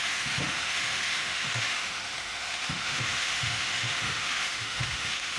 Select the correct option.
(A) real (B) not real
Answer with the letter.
B